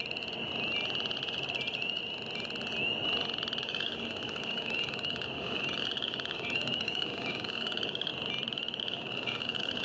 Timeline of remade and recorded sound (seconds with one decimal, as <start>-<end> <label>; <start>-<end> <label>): 0.0-3.6 recorded; 3.6-8.1 remade; 8.1-8.8 recorded; 8.8-9.8 remade